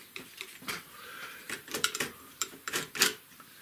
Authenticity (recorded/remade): remade